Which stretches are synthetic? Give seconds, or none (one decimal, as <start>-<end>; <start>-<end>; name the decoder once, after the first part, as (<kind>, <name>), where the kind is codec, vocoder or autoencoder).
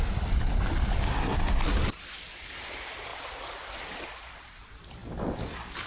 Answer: none